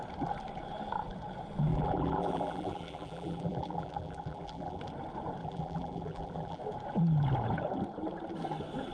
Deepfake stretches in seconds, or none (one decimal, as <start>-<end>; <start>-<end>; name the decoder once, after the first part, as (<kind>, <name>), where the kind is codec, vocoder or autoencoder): 1.7-4.8 (vocoder, BigVGAN v2); 5.4-6.6

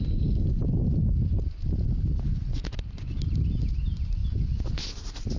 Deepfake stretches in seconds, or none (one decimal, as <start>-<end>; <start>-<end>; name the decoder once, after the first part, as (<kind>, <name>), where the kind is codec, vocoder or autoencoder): none

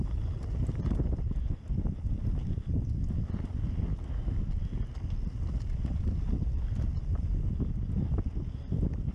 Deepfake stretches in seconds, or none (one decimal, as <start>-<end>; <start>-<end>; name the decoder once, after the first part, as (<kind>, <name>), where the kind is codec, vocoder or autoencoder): none